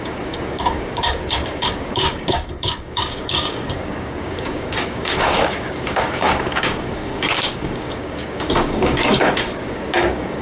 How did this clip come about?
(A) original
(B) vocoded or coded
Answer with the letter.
B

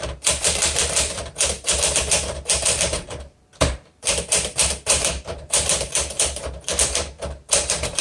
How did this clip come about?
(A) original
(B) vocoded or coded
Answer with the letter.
B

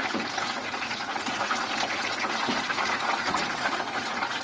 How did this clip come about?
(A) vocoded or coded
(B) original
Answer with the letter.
A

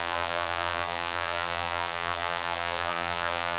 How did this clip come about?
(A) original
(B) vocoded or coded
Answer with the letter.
B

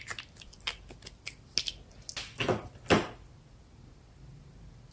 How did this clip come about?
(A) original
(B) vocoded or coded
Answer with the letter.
A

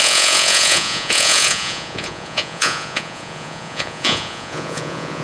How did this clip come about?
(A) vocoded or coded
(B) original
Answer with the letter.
A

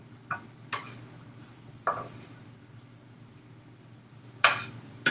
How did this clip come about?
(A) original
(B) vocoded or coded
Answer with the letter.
A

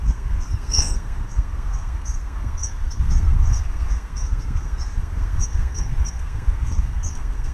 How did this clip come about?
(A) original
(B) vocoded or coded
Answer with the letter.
B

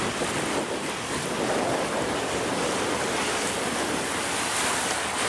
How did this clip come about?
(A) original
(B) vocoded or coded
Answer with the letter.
A